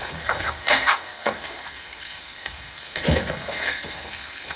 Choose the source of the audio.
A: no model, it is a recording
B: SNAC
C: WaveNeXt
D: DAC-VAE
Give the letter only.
B